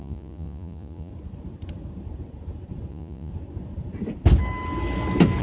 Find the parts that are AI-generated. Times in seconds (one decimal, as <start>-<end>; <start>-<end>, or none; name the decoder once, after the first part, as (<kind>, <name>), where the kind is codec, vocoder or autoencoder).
0.0-1.1 (vocoder, Vocos); 2.9-3.3

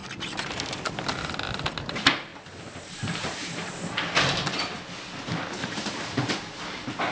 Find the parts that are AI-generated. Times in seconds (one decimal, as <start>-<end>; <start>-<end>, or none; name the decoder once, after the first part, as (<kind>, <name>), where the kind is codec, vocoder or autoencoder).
2.3-3.7 (vocoder, BigVGAN v2); 5.6-6.3

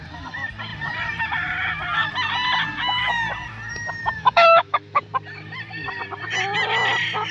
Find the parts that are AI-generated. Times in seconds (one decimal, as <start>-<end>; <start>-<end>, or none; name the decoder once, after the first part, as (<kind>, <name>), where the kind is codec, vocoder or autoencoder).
4.1-5.0 (autoencoder, DAC-VAE)

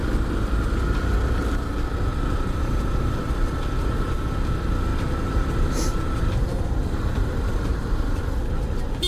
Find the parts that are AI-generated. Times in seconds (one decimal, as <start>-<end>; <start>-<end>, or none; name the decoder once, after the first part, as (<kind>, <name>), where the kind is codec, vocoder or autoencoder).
0.0-0.8 (vocoder, BigVGAN v2); 2.1-3.9; 4.9-8.2

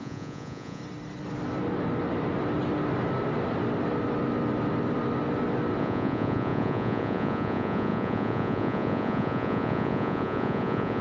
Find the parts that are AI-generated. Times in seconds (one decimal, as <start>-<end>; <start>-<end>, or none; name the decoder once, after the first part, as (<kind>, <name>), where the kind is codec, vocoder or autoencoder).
0.0-0.8 (vocoder, Vocos); 5.8-11.0

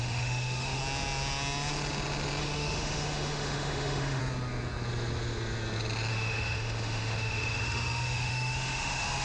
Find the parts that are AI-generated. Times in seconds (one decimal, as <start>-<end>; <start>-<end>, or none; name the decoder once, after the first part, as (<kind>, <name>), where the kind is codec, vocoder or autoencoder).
0.0-0.8 (autoencoder, DAC-VAE); 2.4-4.2; 6.1-9.2